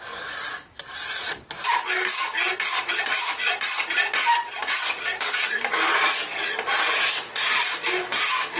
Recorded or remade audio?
recorded